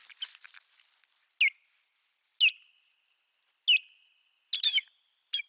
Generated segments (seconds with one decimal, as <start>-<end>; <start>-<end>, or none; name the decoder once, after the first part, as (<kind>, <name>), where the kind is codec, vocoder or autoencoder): none